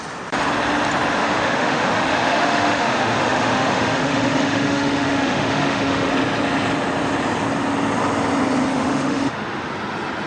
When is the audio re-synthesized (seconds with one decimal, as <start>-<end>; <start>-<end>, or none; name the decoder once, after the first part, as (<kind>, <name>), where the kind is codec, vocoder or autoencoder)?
1.2-6.1 (autoencoder, DAC-VAE); 8.7-9.7